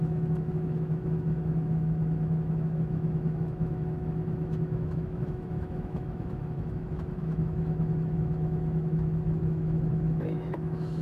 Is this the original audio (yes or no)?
no